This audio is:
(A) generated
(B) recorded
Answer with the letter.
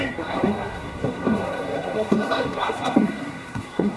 A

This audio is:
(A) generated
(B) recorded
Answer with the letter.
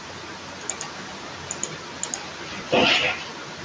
B